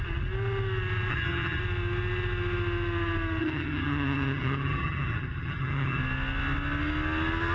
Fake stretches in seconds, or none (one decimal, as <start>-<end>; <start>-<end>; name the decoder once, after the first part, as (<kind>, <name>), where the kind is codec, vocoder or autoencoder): 1.1-1.6 (vocoder, HiFi-GAN); 3.4-6.0